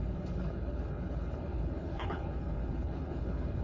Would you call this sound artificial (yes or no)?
yes